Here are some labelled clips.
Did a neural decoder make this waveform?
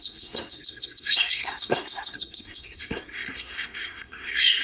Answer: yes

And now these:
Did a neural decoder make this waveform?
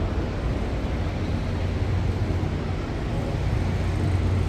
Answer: no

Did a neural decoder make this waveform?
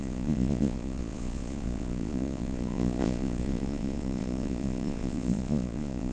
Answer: yes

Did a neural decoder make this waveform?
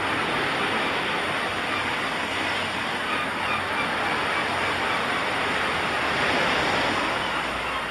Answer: no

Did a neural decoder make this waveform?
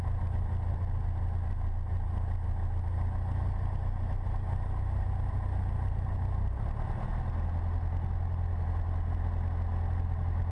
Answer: no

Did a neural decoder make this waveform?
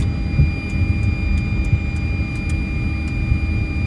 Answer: no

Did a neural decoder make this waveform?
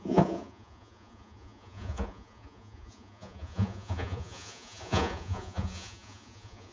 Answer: yes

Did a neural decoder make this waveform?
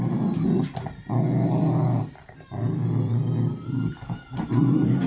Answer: no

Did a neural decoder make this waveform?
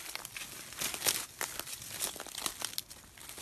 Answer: no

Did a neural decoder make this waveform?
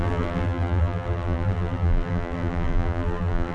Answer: yes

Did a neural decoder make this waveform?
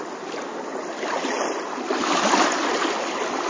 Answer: no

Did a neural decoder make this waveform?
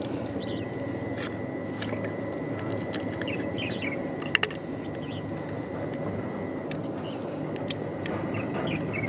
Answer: no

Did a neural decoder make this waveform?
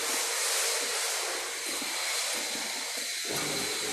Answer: no